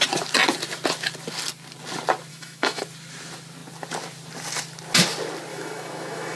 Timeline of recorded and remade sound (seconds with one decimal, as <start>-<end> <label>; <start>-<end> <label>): 0.0-2.3 recorded; 2.3-2.8 remade; 2.8-5.5 recorded; 5.5-6.4 remade